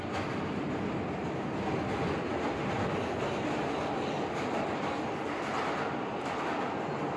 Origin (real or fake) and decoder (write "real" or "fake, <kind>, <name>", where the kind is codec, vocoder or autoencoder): real